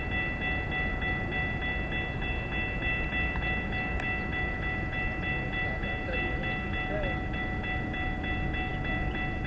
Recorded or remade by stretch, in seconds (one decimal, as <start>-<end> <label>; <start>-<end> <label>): 0.0-9.5 recorded